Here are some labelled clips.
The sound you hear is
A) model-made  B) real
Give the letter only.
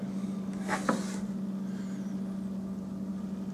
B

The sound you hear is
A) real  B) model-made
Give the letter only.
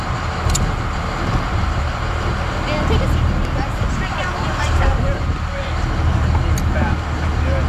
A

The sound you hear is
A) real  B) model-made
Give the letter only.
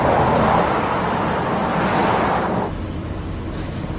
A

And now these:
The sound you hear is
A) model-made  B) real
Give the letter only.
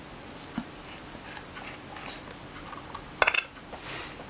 B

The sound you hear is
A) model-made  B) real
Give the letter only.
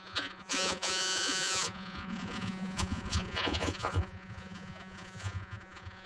A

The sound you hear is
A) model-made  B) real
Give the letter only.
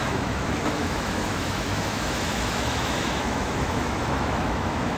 A